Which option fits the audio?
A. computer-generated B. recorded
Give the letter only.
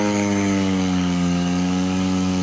A